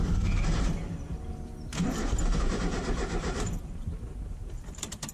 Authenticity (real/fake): fake